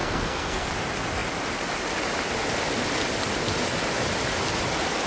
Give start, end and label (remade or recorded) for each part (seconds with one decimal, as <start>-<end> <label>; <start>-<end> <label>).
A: 0.0-0.7 remade; 0.7-5.1 recorded